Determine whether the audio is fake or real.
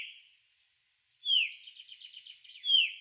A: real